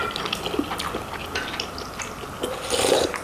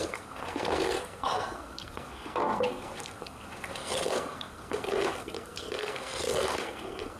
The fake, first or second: second